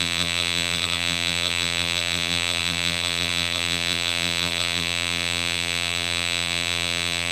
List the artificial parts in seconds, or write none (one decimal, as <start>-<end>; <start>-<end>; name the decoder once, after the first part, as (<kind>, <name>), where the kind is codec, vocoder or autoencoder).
0.0-7.3 (vocoder, BigVGAN v2)